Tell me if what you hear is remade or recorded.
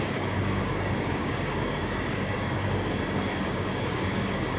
remade